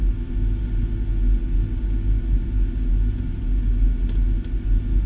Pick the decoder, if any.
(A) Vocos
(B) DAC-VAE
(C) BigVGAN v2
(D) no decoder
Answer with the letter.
D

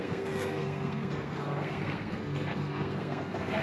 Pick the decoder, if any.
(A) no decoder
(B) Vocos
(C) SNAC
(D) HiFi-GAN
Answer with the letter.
C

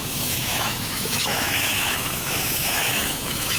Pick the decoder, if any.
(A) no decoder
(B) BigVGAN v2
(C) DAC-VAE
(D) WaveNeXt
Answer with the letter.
C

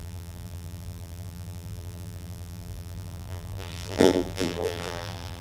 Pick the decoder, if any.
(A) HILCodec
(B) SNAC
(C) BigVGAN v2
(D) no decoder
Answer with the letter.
C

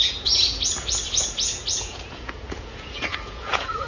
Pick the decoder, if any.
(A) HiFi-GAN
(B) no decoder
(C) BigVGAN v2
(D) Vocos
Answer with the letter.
D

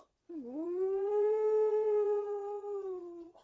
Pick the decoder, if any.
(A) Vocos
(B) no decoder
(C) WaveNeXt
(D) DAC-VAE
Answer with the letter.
C